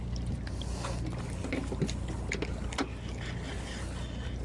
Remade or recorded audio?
recorded